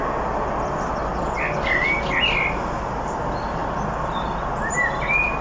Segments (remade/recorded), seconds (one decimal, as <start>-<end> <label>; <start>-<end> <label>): 0.0-5.4 recorded